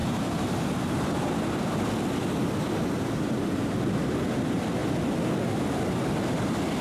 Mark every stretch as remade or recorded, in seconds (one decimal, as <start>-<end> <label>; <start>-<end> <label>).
0.0-0.5 remade; 0.5-6.8 recorded